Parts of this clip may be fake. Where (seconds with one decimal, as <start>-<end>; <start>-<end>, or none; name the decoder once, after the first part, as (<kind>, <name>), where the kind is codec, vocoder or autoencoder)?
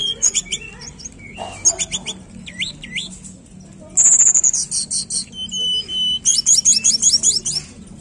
0.0-0.7 (vocoder, Vocos)